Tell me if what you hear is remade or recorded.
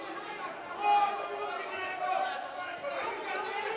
recorded